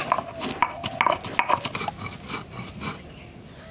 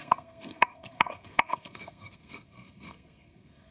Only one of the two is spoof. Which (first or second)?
second